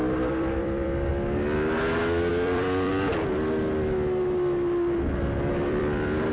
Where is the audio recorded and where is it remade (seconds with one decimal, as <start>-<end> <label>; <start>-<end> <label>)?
0.0-1.1 remade; 1.1-2.3 recorded; 2.3-2.9 remade; 2.9-5.5 recorded; 5.5-6.3 remade